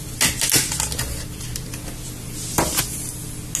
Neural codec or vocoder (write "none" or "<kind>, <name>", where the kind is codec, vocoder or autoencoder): none